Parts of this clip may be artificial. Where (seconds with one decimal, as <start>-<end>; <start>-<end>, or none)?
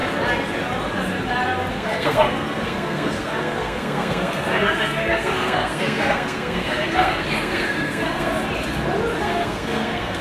1.7-8.3; 9.2-10.2